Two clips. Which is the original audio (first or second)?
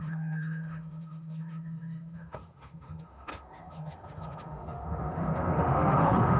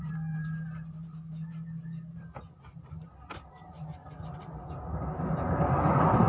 second